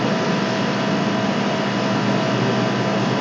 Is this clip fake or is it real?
real